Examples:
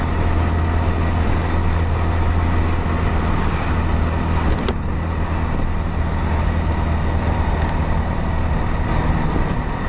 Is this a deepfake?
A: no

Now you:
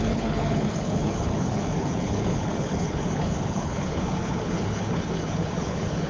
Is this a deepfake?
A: yes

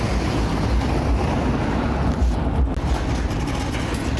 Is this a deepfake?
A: no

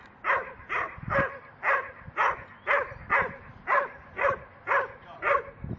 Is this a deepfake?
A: no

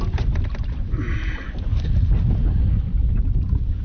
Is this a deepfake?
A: no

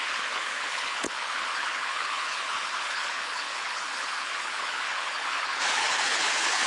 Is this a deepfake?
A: yes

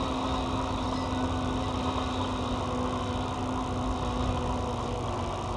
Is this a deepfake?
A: no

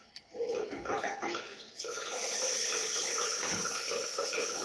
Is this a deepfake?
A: yes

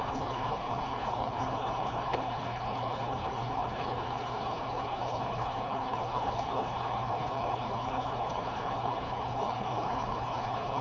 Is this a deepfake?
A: yes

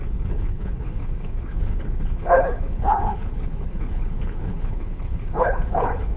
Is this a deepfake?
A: yes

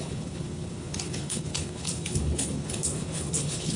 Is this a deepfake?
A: yes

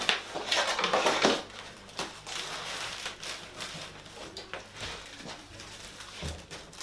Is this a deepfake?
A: no